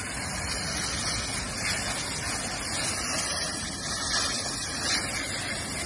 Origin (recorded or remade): recorded